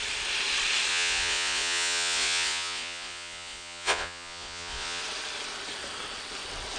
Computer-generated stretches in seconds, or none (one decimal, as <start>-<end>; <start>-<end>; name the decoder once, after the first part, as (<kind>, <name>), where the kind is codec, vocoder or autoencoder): 0.9-5.0 (vocoder, Vocos)